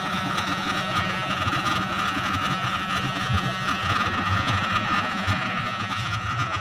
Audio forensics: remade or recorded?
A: remade